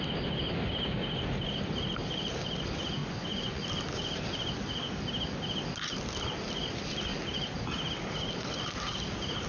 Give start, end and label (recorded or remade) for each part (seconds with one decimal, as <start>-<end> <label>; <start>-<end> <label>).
0.0-3.0 recorded; 3.0-3.6 remade; 3.6-9.5 recorded